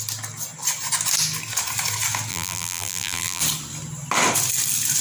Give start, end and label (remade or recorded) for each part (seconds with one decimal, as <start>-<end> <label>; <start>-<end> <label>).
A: 0.0-2.3 recorded; 2.3-3.4 remade; 3.4-5.0 recorded